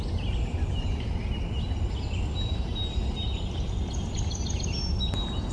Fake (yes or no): no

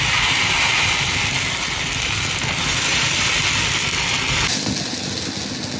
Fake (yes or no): no